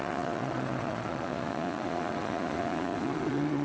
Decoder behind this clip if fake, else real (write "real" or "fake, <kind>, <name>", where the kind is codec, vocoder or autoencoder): fake, vocoder, Vocos